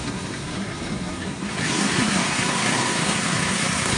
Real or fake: fake